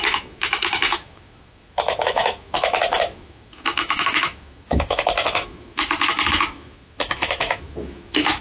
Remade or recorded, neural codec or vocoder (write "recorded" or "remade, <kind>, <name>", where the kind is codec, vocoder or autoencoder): remade, autoencoder, DAC-VAE